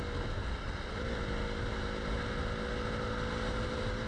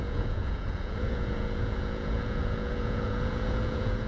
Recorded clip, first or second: first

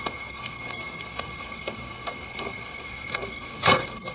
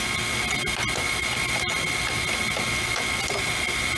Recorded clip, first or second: second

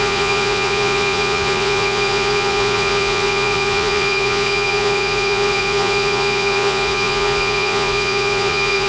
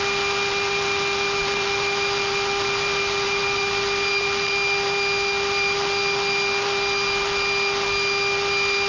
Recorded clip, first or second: second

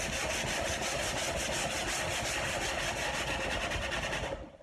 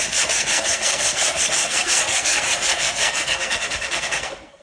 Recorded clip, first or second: first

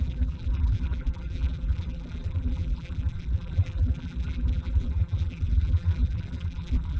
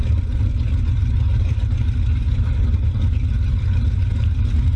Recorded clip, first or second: second